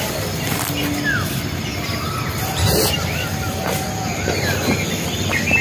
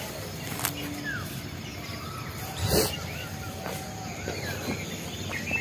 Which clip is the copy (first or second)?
second